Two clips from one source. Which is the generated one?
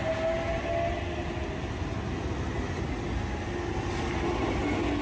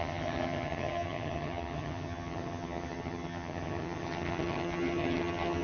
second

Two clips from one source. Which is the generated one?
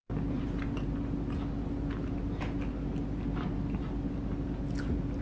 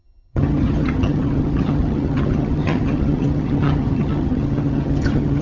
second